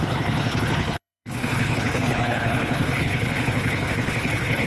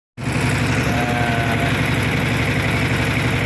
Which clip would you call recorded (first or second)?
second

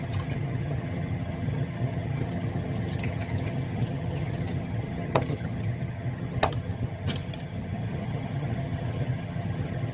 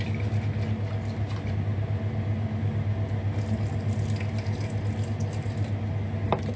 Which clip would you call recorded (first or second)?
second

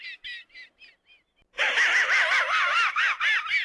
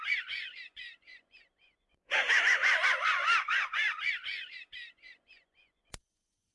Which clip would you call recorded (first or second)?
first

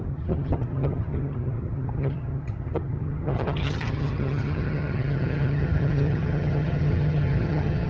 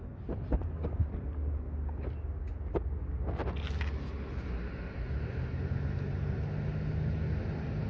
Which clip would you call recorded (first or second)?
second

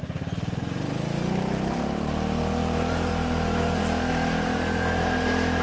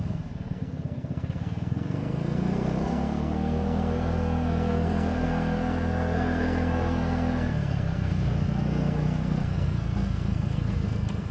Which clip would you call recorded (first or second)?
first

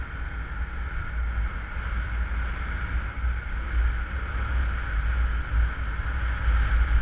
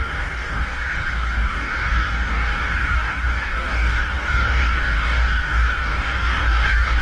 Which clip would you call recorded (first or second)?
first